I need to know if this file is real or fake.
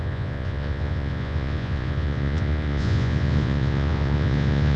fake